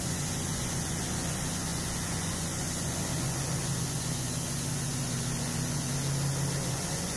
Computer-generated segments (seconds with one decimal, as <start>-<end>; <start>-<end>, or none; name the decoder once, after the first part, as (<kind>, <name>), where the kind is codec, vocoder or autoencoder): 0.0-5.9 (vocoder, Vocos); 6.6-7.2